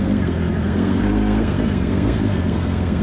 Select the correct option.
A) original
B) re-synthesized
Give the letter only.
B